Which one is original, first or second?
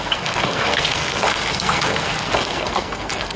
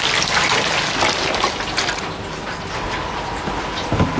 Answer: second